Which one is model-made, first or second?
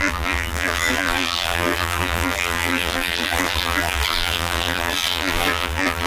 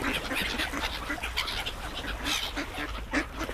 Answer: first